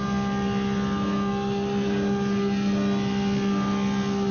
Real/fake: real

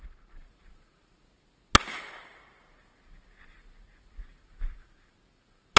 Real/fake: real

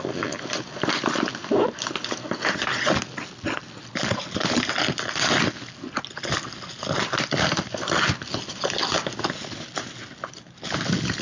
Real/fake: real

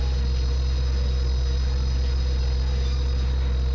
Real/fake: real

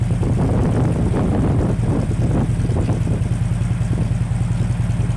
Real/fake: real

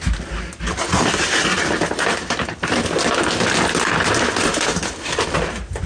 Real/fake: real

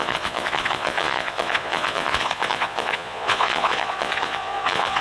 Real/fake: fake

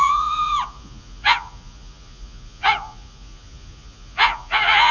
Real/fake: fake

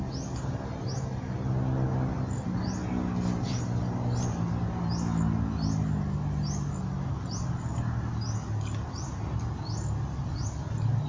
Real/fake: real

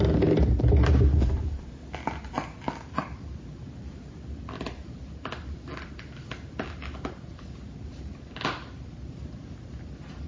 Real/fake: real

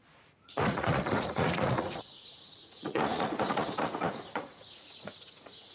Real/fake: fake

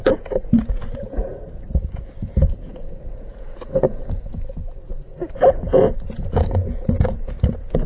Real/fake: fake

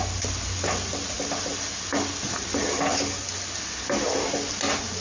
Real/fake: real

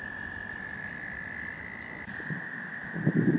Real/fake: real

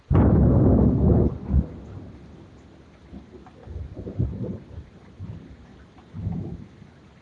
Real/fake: real